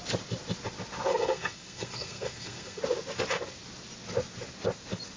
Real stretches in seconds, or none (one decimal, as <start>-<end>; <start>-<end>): 0.0-1.1; 2.8-5.2